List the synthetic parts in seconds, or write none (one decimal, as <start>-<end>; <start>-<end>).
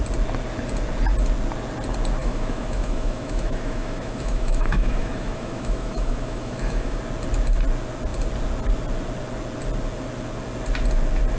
2.2-7.0